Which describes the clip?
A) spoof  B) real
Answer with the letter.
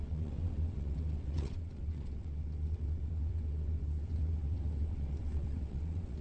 A